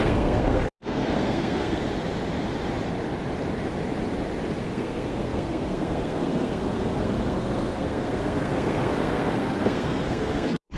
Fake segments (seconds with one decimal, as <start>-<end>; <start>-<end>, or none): 0.0-1.8; 4.6-10.8